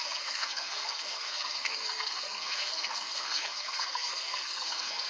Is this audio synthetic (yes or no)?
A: yes